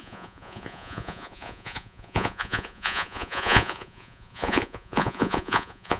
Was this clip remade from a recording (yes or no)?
yes